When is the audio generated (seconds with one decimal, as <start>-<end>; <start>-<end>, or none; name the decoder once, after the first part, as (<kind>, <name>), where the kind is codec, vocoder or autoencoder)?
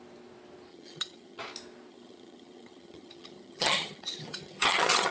0.7-1.4 (vocoder, HiFi-GAN); 1.9-5.1